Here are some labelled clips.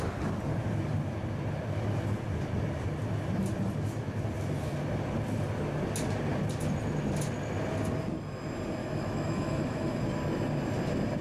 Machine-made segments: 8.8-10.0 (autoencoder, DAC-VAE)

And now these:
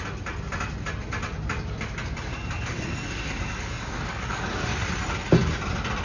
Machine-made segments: 2.3-4.8 (codec, DAC)